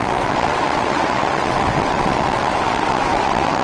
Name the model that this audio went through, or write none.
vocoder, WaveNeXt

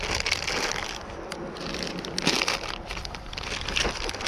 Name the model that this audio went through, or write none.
none